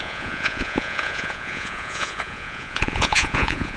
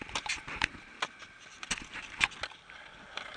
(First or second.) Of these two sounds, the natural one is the second